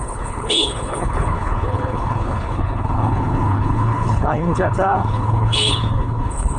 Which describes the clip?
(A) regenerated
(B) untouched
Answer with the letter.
A